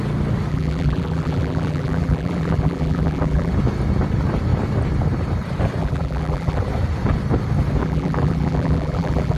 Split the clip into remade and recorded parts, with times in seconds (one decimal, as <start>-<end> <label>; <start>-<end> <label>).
0.0-0.5 recorded; 0.5-3.5 remade; 3.5-5.8 recorded; 5.8-6.6 remade; 6.6-7.8 recorded; 7.8-9.4 remade